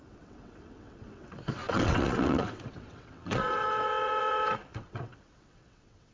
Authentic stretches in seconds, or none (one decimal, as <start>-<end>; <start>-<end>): none